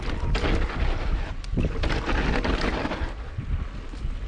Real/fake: real